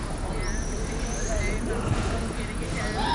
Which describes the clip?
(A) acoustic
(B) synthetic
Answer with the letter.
A